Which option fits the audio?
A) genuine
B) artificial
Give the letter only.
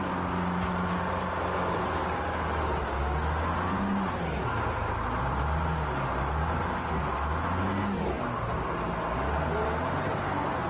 A